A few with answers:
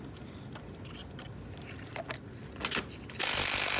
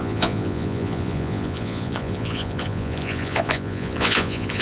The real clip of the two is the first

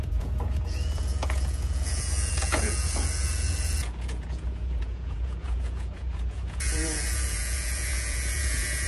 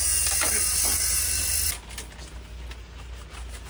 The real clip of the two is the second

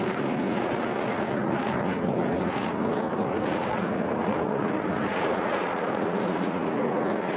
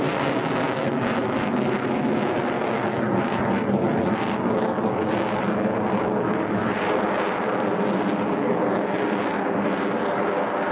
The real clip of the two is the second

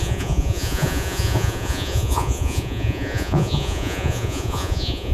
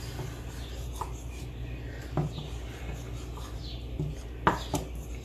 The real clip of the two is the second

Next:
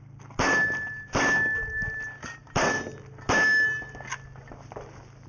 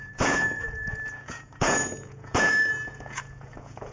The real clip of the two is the first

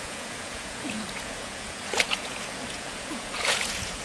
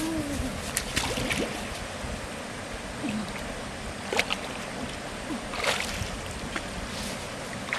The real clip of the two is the second